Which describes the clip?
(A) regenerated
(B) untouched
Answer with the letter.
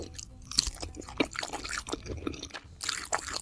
B